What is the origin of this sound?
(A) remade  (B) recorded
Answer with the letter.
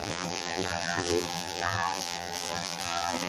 A